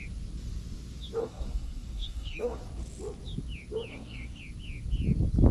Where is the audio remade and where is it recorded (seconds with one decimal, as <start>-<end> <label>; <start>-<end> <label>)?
0.0-1.2 recorded; 1.2-2.6 remade; 2.6-3.9 recorded; 3.9-4.4 remade; 4.4-5.5 recorded